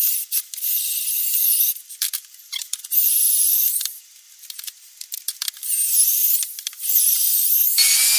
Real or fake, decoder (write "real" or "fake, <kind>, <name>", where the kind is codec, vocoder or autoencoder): real